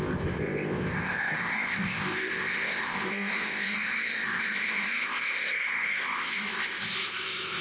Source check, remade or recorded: remade